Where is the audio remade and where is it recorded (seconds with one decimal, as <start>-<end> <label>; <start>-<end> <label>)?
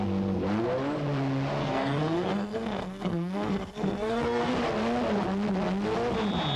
0.0-1.6 recorded; 1.6-4.5 remade; 4.5-6.6 recorded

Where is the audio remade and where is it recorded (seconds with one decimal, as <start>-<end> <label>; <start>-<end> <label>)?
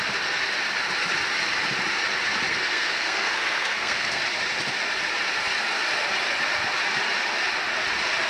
0.0-2.5 recorded; 2.5-4.2 remade; 4.2-8.3 recorded